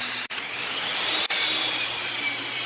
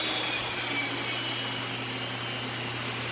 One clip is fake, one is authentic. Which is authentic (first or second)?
second